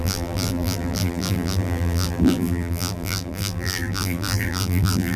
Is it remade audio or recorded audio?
remade